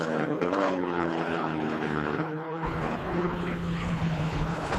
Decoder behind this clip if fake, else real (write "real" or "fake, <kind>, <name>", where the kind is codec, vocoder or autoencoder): fake, codec, HILCodec